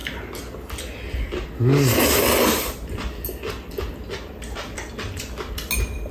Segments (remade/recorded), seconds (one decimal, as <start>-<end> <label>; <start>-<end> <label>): 0.0-6.1 recorded